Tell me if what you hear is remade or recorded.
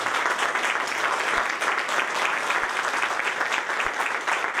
recorded